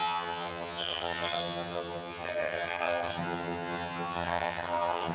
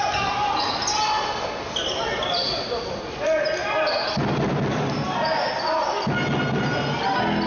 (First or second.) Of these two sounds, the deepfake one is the first